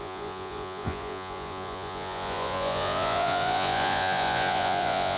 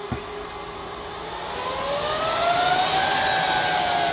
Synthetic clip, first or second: first